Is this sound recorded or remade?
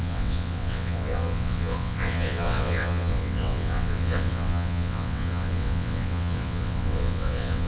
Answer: remade